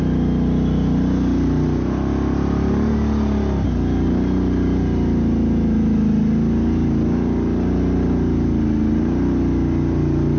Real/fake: real